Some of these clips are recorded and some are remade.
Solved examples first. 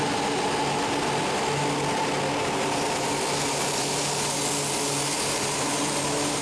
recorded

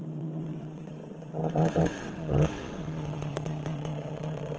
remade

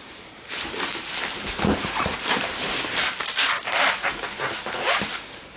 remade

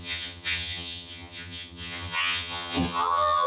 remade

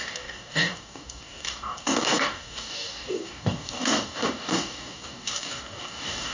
remade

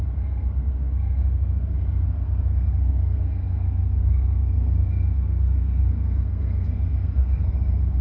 remade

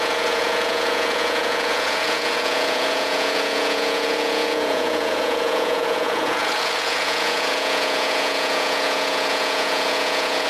remade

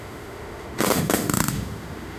remade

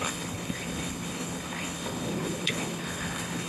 remade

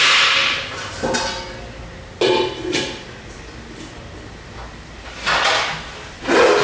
recorded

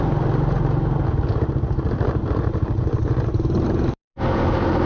remade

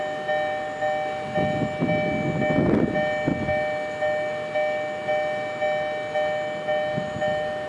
recorded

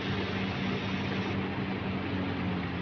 recorded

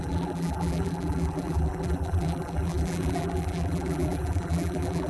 remade